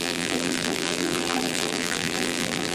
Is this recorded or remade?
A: remade